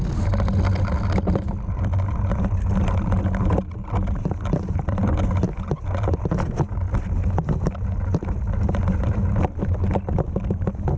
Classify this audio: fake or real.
real